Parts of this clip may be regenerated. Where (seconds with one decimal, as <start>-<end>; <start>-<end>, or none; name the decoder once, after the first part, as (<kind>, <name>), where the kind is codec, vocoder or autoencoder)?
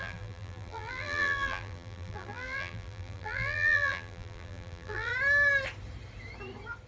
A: 0.0-5.1 (vocoder, BigVGAN v2)